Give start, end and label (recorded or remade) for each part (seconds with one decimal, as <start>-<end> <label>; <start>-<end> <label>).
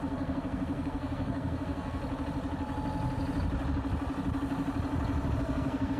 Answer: 0.0-2.0 remade; 2.0-5.4 recorded; 5.4-6.0 remade